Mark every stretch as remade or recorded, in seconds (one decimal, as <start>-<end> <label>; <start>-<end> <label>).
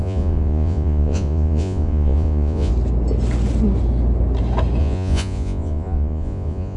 0.0-2.7 remade; 2.7-4.8 recorded; 4.8-6.8 remade